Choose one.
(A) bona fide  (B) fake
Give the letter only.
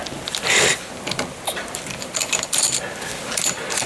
B